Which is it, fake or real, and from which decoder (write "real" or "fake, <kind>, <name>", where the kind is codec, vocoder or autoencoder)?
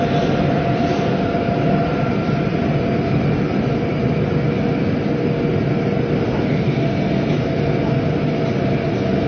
real